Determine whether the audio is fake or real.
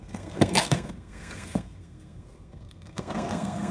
fake